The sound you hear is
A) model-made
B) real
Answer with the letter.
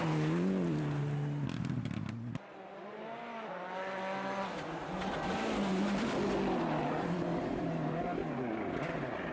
B